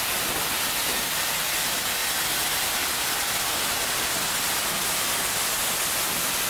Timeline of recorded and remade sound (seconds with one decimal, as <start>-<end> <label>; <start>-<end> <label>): 0.0-0.9 recorded; 0.9-1.5 remade; 1.5-6.5 recorded